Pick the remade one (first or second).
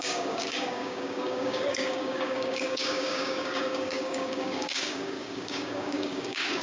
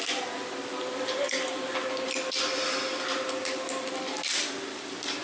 first